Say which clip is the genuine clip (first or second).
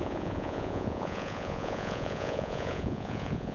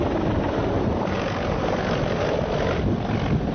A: second